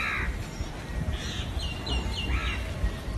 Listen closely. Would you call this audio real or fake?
real